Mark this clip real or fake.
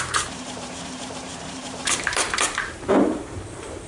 fake